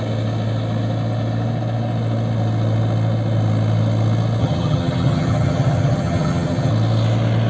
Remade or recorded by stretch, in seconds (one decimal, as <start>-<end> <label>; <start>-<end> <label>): 0.0-4.4 recorded; 4.4-6.7 remade; 6.7-7.5 recorded